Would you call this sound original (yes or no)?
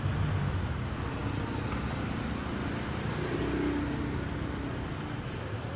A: yes